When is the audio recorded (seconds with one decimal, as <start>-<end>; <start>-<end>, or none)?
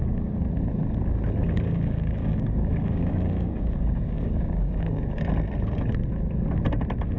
0.0-1.4; 5.2-7.2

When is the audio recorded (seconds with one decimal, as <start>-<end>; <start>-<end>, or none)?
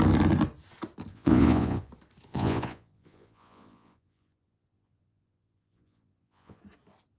0.0-1.1; 1.9-2.3; 6.6-7.2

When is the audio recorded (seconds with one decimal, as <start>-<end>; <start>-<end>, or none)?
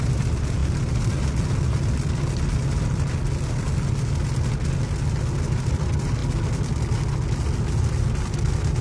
0.0-8.8